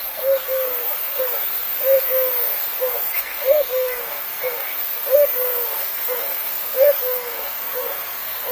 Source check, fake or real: fake